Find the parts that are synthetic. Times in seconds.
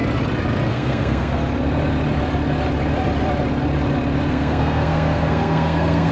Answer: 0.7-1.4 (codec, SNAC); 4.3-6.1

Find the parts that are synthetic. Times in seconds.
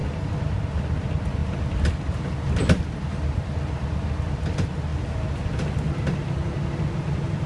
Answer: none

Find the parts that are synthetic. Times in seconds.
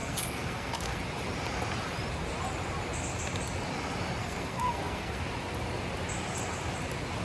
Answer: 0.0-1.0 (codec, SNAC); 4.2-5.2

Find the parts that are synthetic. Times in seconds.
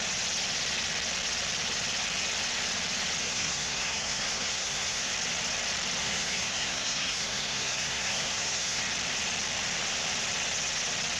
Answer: 3.2-5.1 (codec, SNAC); 6.0-8.8